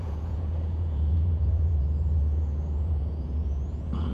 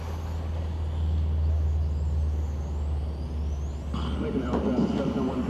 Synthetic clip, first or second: first